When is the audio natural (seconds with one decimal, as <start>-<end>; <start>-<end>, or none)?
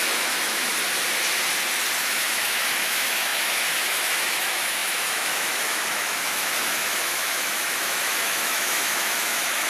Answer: 0.7-2.0